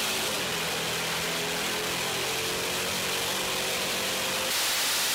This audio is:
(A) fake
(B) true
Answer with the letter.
B